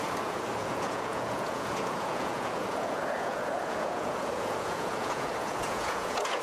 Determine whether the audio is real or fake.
fake